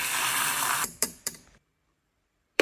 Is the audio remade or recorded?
remade